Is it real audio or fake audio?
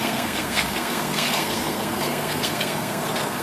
fake